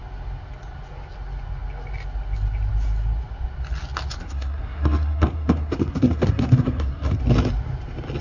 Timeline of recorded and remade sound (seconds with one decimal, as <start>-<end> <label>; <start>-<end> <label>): 0.0-4.2 recorded; 4.2-7.2 remade; 7.2-8.2 recorded